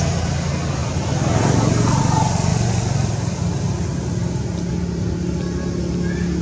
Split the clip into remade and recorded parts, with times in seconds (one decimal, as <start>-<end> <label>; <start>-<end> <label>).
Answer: 0.0-6.4 recorded